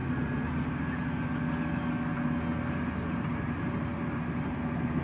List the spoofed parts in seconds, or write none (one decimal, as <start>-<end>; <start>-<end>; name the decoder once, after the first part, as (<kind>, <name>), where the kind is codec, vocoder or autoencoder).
none